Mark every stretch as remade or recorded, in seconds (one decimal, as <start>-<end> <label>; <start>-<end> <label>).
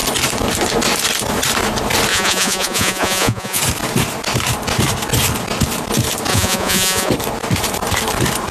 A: 0.0-2.1 recorded; 2.1-3.6 remade; 3.6-6.3 recorded; 6.3-7.1 remade; 7.1-8.5 recorded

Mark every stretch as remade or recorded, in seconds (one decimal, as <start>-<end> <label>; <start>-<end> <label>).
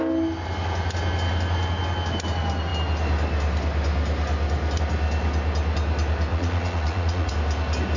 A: 0.0-6.3 recorded; 6.3-7.3 remade; 7.3-8.0 recorded